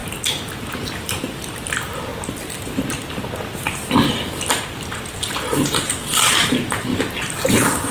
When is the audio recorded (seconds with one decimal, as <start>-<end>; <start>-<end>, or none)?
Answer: 0.0-0.6; 2.1-4.8; 6.9-7.5